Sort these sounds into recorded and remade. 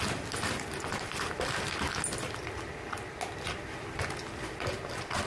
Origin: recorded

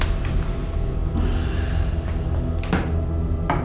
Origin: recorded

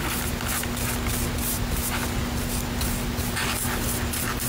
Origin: recorded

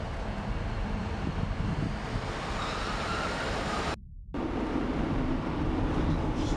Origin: remade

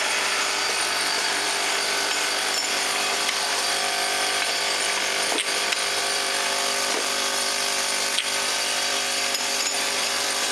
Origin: remade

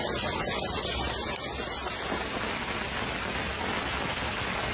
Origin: recorded